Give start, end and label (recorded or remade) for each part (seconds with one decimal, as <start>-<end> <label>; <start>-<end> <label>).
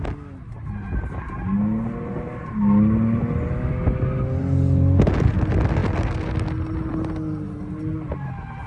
0.0-8.7 recorded